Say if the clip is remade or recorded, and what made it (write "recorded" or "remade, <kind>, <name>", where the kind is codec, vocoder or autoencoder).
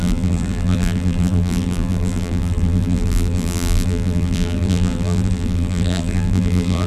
remade, vocoder, BigVGAN v2